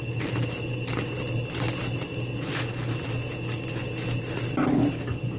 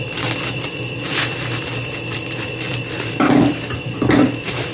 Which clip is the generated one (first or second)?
second